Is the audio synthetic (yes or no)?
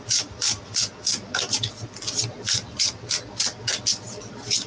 no